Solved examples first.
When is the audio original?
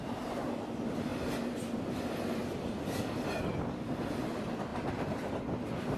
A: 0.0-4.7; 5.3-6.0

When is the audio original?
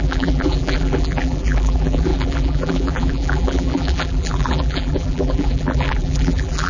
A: none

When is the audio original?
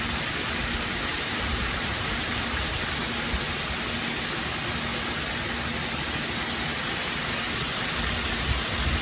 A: 0.0-1.1; 3.0-9.0